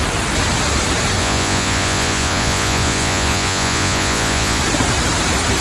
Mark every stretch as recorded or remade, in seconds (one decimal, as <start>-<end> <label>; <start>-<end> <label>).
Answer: 0.0-1.2 recorded; 1.2-4.6 remade; 4.6-5.6 recorded